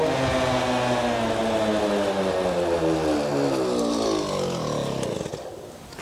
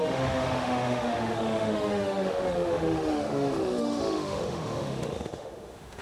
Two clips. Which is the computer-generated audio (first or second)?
second